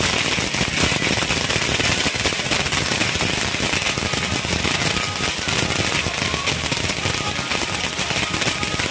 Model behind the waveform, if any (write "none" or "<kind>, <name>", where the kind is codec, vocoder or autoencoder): none